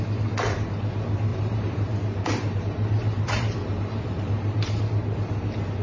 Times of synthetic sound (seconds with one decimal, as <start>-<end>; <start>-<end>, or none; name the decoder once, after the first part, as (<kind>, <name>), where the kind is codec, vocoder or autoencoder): 1.3-4.8 (vocoder, BigVGAN v2)